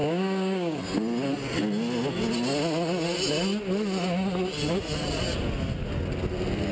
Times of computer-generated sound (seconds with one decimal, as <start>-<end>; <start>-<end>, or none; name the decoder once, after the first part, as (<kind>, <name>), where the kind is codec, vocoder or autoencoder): 0.0-0.8 (codec, DAC)